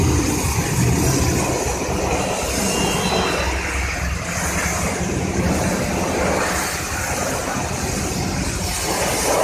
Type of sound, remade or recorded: recorded